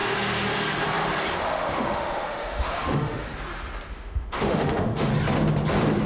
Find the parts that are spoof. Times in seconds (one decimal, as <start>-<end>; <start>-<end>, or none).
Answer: 1.4-3.3; 3.9-5.1